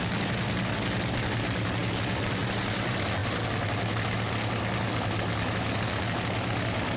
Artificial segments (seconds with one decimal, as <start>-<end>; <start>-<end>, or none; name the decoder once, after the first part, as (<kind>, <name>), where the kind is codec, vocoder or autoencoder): none